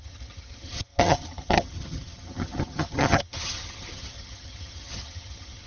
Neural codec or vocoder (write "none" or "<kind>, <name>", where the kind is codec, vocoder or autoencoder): vocoder, HiFi-GAN